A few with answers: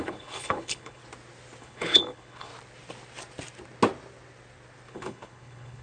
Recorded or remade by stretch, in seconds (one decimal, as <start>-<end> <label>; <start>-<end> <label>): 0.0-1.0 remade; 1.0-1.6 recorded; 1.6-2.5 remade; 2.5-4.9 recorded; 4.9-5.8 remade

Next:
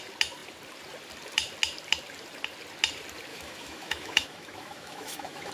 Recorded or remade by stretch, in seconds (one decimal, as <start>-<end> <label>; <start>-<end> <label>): 0.0-3.3 recorded; 3.3-5.5 remade

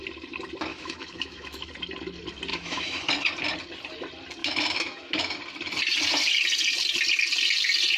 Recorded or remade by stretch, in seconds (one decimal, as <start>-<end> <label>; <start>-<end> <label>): 0.0-0.7 recorded; 0.7-1.7 remade; 1.7-2.5 recorded; 2.5-3.1 remade; 3.1-4.4 recorded; 4.4-5.4 remade; 5.4-8.0 recorded

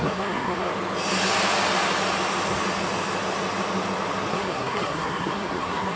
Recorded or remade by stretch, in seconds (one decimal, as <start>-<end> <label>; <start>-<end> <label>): 0.0-0.7 remade; 0.7-4.3 recorded; 4.3-6.0 remade